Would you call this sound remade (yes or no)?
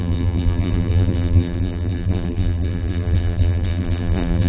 yes